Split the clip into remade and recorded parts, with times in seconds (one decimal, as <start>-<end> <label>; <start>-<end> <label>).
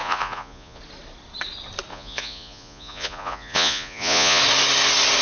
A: 0.0-0.8 remade; 0.8-1.9 recorded; 1.9-4.4 remade; 4.4-5.2 recorded